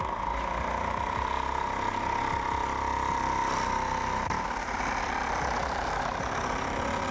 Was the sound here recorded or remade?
recorded